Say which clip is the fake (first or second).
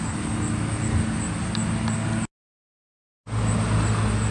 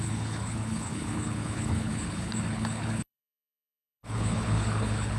second